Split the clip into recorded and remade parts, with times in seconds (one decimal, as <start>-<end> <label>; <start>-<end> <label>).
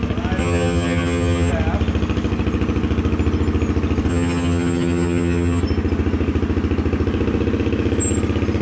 0.0-0.4 recorded; 0.4-1.5 remade; 1.5-4.1 recorded; 4.1-5.6 remade; 5.6-8.6 recorded